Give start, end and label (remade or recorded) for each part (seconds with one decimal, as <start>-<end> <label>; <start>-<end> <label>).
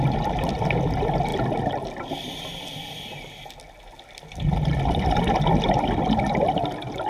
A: 0.0-7.1 recorded